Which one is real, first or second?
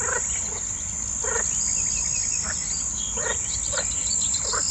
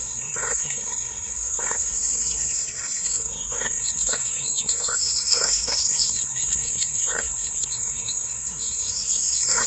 first